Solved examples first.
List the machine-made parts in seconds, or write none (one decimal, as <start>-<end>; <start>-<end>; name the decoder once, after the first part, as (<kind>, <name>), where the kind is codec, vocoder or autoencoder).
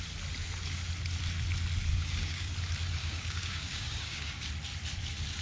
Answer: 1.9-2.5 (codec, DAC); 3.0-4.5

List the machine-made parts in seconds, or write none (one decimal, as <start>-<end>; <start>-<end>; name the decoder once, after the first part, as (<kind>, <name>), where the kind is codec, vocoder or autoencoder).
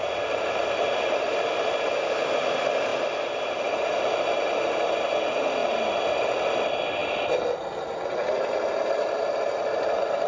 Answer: none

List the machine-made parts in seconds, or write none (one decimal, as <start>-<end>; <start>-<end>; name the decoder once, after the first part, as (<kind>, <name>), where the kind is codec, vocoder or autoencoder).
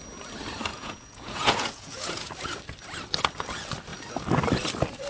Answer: 0.7-2.3 (vocoder, Vocos)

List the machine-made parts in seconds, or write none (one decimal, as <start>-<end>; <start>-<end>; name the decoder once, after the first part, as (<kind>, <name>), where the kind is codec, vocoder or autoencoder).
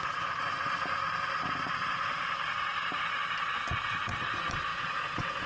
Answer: 4.7-5.5 (vocoder, Vocos)